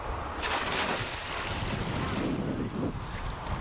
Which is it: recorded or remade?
recorded